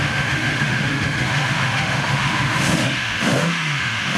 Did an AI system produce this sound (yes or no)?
yes